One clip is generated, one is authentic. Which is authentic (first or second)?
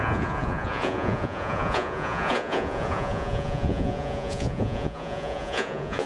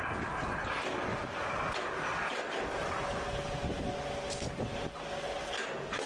second